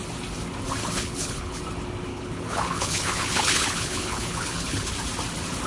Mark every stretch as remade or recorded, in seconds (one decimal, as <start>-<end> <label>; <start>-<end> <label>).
0.0-0.8 recorded; 0.8-1.6 remade; 1.6-2.1 recorded; 2.1-4.9 remade; 4.9-5.7 recorded